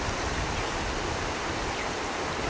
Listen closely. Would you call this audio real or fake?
real